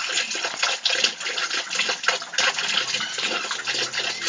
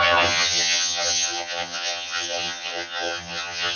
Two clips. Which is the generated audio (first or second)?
second